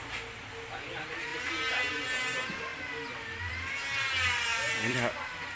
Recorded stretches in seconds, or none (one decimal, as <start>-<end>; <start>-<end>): 0.0-4.5; 5.1-5.6